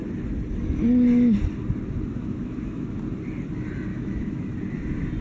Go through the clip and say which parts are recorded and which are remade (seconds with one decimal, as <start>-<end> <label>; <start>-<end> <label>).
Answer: 0.0-2.1 recorded; 2.1-3.0 remade; 3.0-3.9 recorded; 3.9-4.4 remade; 4.4-5.2 recorded